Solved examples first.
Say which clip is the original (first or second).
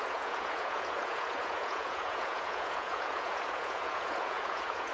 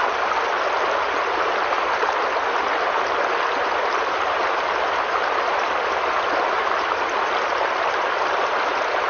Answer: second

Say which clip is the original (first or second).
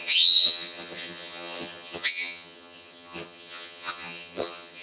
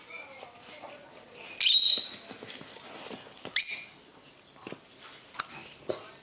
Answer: second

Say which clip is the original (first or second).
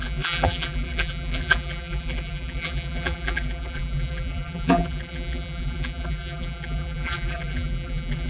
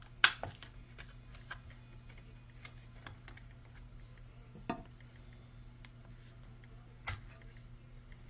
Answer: second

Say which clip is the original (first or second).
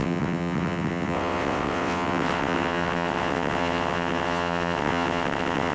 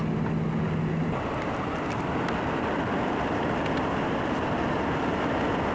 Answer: second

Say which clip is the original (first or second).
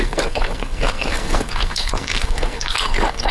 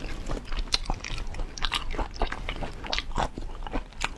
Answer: second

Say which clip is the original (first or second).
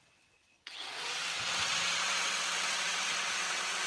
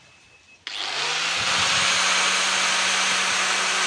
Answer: second